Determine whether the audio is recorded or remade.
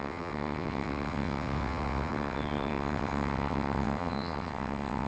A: remade